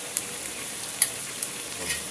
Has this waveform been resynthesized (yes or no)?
yes